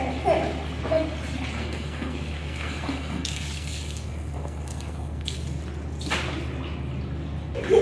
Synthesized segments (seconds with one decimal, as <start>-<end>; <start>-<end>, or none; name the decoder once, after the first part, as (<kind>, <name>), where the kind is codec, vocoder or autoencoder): 1.6-5.6 (codec, SNAC)

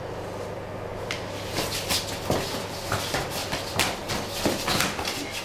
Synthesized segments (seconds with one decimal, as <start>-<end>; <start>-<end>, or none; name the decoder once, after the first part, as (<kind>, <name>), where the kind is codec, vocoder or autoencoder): 3.4-4.1 (vocoder, BigVGAN v2)